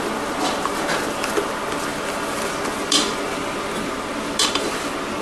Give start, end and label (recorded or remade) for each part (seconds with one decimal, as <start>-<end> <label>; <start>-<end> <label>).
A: 0.0-5.2 recorded